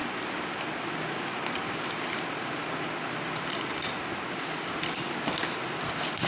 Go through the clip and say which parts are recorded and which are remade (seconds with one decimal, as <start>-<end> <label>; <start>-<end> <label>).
0.0-6.3 recorded